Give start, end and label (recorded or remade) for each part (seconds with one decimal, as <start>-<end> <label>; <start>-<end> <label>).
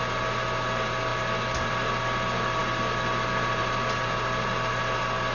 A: 0.0-5.3 recorded